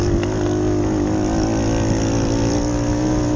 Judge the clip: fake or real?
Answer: real